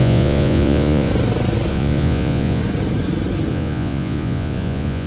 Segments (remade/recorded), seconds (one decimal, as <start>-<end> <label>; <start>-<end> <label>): 0.0-1.1 remade; 1.1-1.7 recorded; 1.7-2.6 remade; 2.6-3.5 recorded; 3.5-5.1 remade